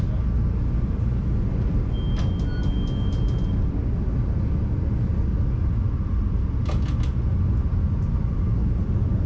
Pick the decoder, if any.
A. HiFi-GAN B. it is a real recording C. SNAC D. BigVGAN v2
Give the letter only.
B